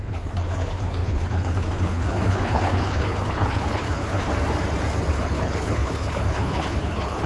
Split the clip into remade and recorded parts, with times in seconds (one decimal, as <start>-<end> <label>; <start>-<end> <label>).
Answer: 0.0-4.3 remade; 4.3-5.1 recorded; 5.1-7.3 remade